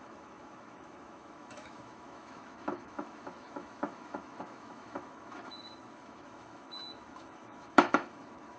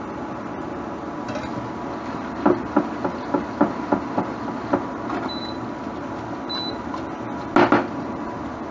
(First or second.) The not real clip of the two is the first